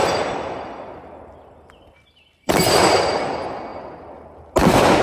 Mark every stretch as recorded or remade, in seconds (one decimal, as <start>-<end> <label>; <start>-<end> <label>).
0.0-3.0 remade; 3.0-5.0 recorded